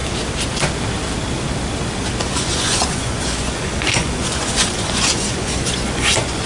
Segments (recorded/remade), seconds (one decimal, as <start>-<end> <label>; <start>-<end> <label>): 0.0-2.2 recorded; 2.2-6.5 remade